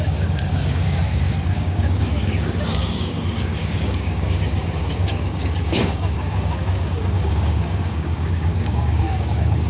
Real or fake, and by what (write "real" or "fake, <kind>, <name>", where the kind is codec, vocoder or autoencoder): fake, codec, DAC